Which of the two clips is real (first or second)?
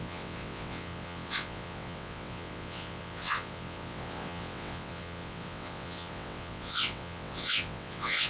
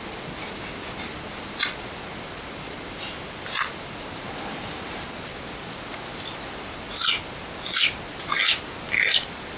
second